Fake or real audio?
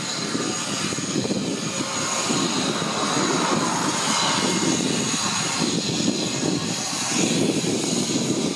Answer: real